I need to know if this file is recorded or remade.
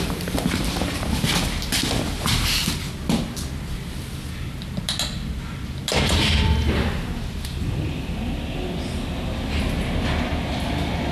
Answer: recorded